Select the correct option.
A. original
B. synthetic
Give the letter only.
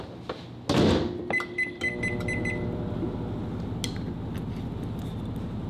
A